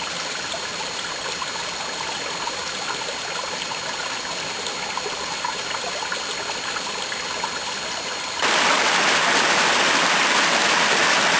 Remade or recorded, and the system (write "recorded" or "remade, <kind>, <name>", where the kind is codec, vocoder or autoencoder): recorded